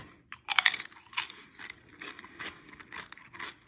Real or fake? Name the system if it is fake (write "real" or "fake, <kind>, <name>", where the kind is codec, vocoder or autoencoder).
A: real